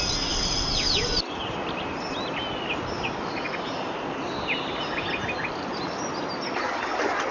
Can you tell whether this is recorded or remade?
recorded